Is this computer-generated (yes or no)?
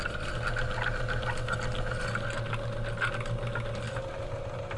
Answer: no